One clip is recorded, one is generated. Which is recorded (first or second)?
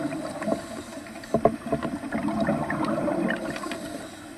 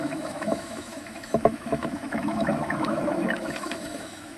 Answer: first